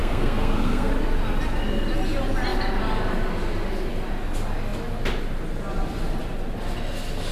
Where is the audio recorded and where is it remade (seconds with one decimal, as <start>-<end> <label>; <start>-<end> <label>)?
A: 0.0-0.9 remade; 0.9-7.3 recorded